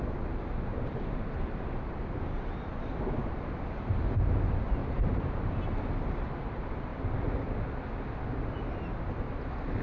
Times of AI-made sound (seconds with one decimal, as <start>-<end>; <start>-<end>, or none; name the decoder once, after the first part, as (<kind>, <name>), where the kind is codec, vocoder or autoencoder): 0.7-2.4 (vocoder, BigVGAN v2); 4.8-5.8